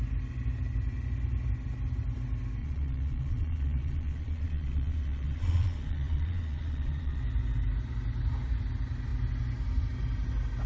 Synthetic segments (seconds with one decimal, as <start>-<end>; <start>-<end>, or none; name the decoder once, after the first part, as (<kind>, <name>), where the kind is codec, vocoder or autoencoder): 2.6-7.2 (vocoder, Vocos)